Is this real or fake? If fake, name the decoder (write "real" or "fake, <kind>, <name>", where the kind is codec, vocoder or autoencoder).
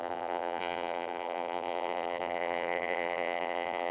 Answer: fake, vocoder, BigVGAN v2